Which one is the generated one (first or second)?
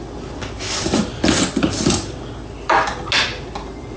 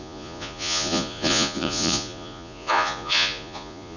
second